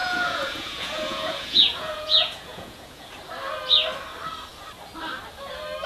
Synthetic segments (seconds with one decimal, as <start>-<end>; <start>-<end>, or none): 0.0-3.1